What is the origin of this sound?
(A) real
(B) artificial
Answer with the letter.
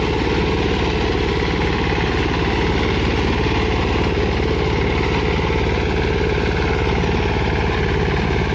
A